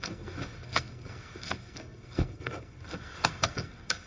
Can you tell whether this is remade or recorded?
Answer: remade